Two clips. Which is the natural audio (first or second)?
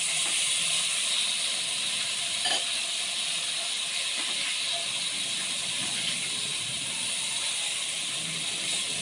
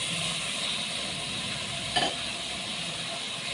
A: second